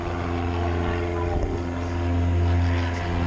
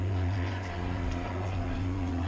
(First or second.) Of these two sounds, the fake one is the second